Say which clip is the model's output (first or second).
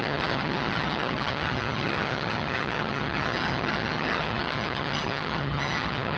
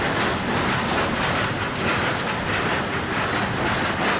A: first